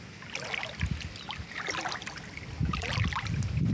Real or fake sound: real